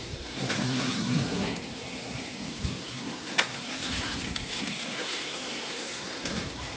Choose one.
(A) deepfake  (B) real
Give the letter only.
A